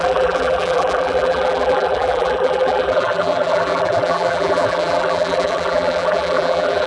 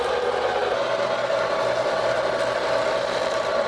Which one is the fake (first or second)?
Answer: first